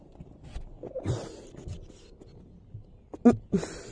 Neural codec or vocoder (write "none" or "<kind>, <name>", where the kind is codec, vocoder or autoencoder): none